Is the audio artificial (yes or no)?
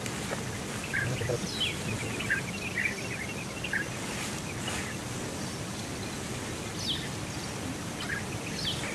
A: no